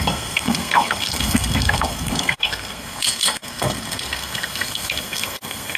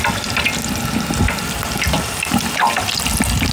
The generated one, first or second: first